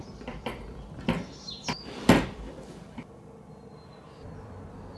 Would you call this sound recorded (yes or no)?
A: no